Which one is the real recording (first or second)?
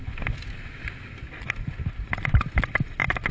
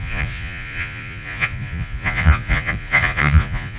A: first